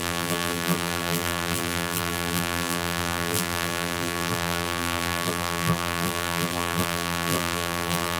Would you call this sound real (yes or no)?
no